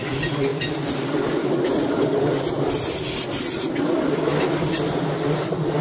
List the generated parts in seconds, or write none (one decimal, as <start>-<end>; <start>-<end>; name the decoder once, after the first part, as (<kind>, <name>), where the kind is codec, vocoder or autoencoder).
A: 0.5-3.7 (vocoder, BigVGAN v2)